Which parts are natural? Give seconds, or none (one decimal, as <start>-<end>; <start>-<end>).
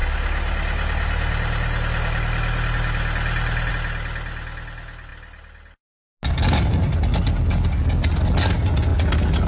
0.0-9.5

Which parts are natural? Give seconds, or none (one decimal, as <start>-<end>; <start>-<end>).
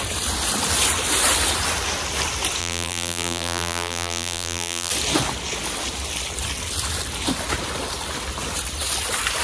0.0-2.6; 4.9-9.4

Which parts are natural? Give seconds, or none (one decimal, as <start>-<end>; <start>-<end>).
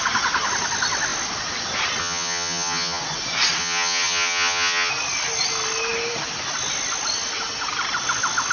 0.0-2.0; 3.0-3.6; 4.9-8.5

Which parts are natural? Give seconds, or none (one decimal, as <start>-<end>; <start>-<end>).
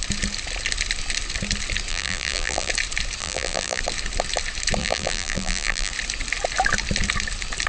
0.0-1.9; 2.7-3.2; 3.8-4.8; 5.9-7.7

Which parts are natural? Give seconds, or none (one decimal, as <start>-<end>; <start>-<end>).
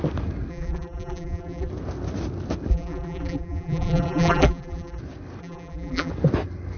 0.0-0.5; 1.7-2.7; 5.0-5.4; 6.1-6.8